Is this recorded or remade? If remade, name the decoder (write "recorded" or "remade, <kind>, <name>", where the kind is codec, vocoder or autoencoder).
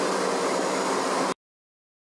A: recorded